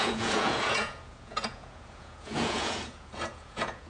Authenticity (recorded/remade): remade